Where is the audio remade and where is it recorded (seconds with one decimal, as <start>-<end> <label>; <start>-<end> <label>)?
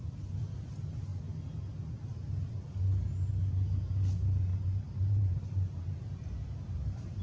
0.0-4.5 recorded; 4.5-7.2 remade